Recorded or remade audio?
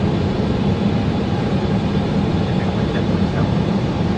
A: remade